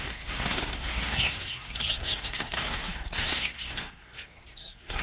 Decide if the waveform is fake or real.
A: fake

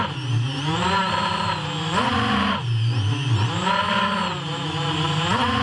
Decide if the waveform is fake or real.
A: real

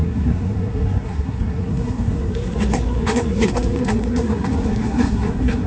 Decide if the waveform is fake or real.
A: fake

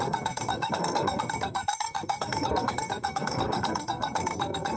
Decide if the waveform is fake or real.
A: fake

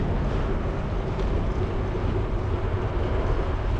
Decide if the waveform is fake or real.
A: real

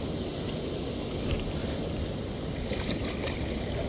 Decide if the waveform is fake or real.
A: real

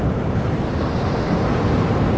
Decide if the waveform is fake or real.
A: real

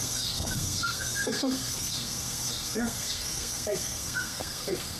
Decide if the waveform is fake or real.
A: fake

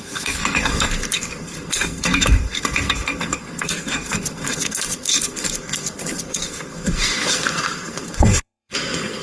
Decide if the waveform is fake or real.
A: fake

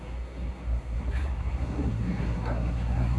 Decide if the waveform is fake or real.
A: fake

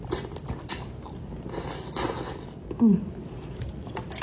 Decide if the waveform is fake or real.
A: real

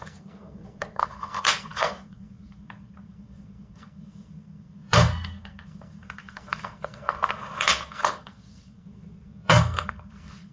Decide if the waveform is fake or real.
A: fake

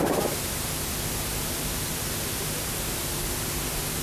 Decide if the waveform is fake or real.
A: real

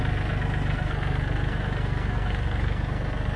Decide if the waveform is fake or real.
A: fake